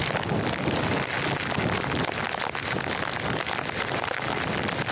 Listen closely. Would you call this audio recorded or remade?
recorded